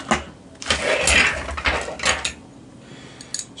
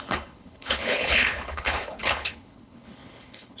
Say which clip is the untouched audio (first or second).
first